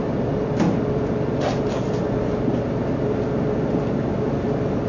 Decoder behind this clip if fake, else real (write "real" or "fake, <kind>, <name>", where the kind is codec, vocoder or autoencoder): real